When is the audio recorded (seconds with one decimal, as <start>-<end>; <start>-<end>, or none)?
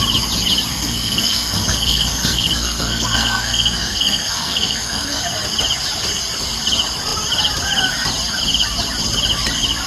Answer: 0.0-0.7; 5.2-9.9